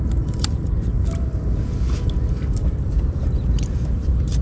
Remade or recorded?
remade